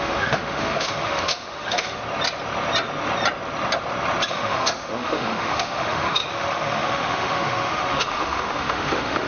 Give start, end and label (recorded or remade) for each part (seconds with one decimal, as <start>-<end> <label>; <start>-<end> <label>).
0.0-2.0 remade; 2.0-4.3 recorded; 4.3-9.3 remade